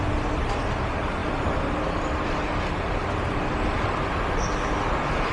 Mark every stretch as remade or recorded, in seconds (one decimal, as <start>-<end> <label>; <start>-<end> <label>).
0.0-5.3 recorded